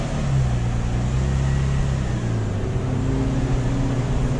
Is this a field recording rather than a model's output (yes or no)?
yes